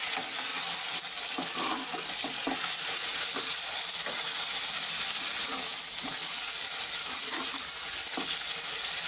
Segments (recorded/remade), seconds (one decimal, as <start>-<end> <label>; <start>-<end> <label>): 0.0-9.1 recorded